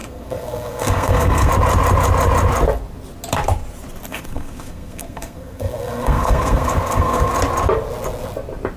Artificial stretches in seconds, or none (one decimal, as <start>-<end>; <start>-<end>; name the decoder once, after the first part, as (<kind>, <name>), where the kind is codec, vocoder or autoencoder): 0.0-1.5 (codec, SNAC); 4.1-7.3